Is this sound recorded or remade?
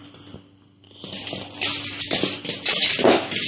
recorded